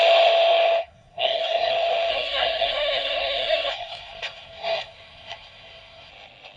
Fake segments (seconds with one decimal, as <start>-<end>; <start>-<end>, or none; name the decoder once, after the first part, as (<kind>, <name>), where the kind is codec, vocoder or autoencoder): 0.8-1.7 (codec, SNAC); 2.1-6.1

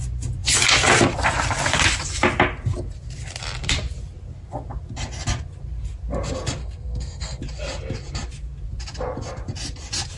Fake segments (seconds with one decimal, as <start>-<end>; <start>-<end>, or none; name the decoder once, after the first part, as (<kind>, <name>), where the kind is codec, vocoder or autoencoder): 6.6-7.4 (codec, SNAC)